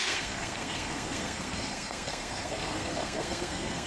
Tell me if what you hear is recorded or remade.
remade